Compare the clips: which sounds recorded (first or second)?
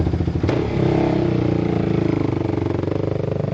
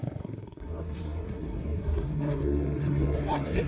first